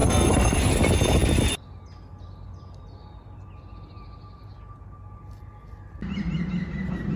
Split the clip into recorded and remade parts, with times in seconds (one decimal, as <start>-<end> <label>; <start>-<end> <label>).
0.0-0.7 remade; 0.7-7.2 recorded